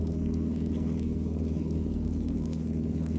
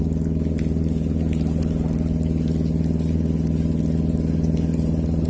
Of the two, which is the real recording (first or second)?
second